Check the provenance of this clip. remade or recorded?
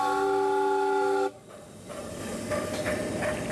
recorded